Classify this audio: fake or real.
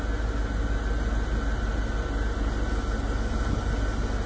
real